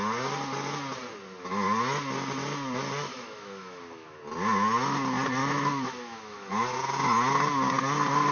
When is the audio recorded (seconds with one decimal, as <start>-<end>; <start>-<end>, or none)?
0.0-3.1; 4.2-5.4; 6.5-8.3